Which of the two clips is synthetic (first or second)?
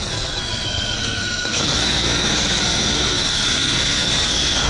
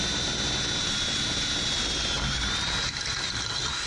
first